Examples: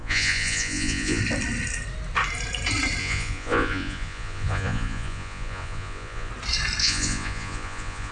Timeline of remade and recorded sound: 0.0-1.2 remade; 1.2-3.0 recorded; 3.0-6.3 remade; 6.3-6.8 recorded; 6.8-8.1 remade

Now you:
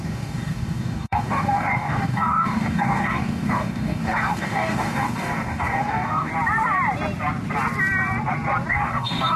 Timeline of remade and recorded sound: 0.0-6.3 remade; 6.3-8.7 recorded; 8.7-9.4 remade